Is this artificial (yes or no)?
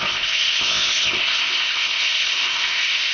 yes